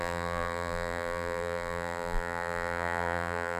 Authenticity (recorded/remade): remade